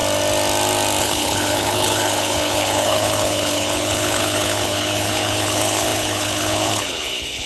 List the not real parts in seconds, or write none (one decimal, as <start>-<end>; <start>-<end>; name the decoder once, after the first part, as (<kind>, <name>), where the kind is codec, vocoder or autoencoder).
1.0-7.5 (codec, HILCodec)